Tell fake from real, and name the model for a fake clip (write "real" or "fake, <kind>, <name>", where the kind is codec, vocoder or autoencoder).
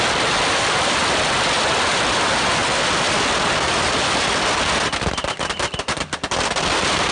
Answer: real